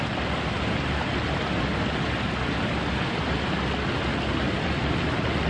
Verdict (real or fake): real